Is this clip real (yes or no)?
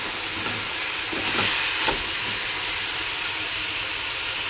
yes